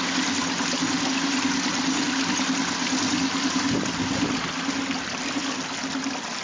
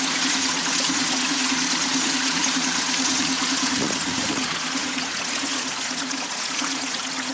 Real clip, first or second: first